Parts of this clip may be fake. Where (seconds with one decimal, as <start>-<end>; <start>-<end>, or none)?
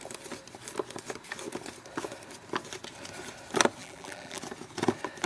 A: 3.8-4.4